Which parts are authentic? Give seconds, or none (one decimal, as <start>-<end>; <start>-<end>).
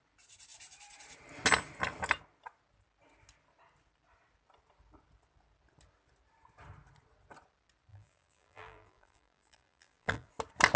0.0-7.9; 10.3-10.8